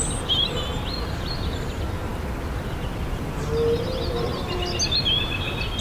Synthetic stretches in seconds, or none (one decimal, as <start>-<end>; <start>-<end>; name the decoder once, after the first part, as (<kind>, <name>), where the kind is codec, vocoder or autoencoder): none